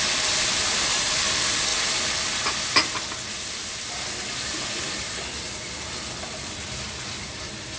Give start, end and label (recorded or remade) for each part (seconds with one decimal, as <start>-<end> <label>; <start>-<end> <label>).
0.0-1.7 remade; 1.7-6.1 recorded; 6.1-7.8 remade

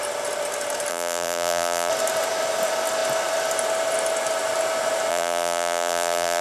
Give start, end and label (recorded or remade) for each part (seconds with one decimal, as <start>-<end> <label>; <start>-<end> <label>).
0.0-0.9 recorded; 0.9-1.9 remade; 1.9-5.1 recorded; 5.1-6.4 remade

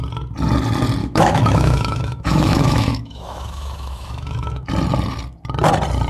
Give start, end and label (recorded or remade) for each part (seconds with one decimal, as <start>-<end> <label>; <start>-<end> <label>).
0.0-1.0 recorded; 1.0-4.7 remade; 4.7-6.1 recorded

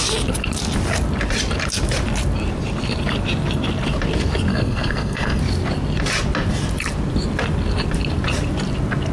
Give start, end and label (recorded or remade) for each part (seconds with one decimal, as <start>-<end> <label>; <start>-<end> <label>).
0.0-4.5 recorded; 4.5-5.4 remade; 5.4-9.1 recorded

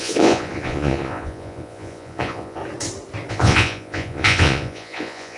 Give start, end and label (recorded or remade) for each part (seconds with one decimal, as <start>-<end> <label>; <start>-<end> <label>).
0.0-2.6 remade; 2.6-3.3 recorded; 3.3-5.4 remade